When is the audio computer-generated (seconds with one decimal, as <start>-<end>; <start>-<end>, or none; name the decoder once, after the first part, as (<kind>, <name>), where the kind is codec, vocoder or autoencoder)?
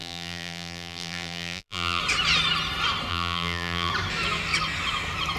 0.0-2.0 (vocoder, BigVGAN v2); 3.1-3.9